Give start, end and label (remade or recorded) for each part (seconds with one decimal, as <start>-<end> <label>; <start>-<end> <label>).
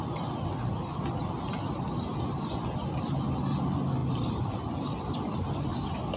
0.0-4.0 recorded; 4.0-4.5 remade; 4.5-6.2 recorded